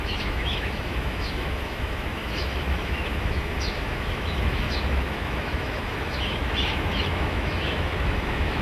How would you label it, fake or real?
fake